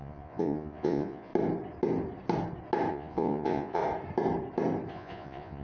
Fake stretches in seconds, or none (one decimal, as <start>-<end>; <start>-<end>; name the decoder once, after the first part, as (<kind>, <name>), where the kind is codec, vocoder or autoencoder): 0.0-1.3 (vocoder, Vocos); 2.9-3.8; 4.9-5.6